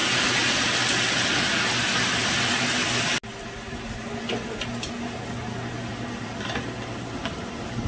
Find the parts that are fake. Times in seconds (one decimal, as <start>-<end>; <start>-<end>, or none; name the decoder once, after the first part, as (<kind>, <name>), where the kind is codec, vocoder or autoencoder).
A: none